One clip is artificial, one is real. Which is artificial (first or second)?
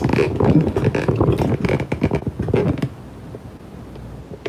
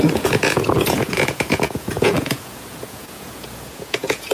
second